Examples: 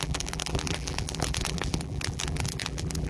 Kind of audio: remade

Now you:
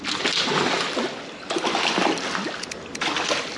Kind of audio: recorded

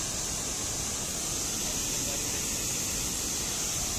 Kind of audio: recorded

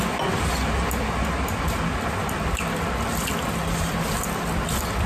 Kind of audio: recorded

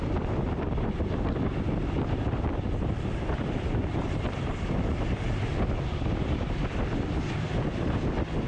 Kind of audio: remade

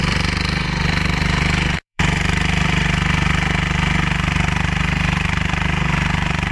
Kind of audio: remade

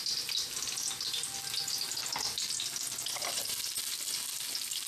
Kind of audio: recorded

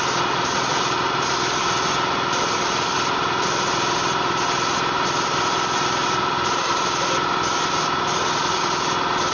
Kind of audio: recorded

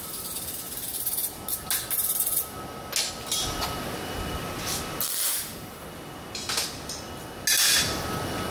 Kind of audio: recorded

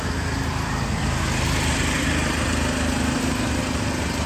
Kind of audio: recorded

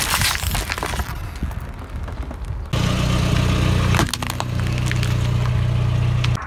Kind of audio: recorded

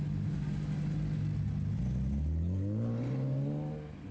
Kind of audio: recorded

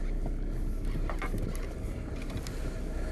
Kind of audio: recorded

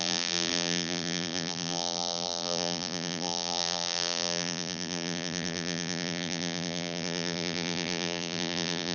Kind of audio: remade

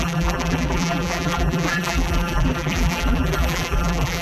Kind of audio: remade